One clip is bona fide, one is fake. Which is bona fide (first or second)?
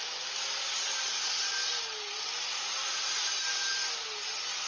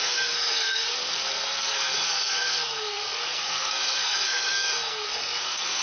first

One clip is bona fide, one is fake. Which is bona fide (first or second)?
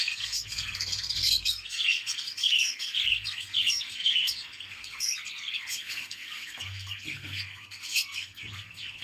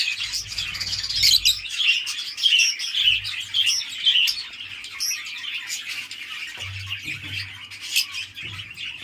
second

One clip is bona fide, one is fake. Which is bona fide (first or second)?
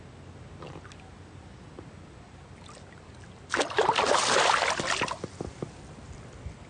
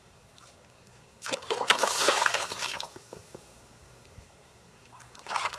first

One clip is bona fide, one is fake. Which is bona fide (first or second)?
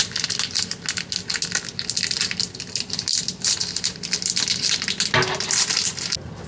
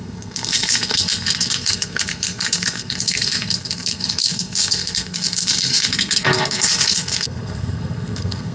first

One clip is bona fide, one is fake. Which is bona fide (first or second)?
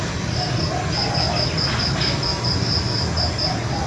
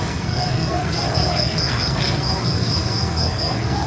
first